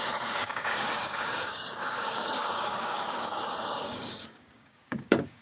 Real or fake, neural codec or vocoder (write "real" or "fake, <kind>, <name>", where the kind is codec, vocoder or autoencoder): fake, codec, DAC